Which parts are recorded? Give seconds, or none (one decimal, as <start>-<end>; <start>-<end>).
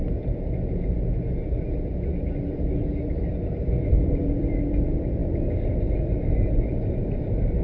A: 0.0-7.6